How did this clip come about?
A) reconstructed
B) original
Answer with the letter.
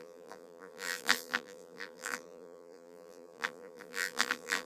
A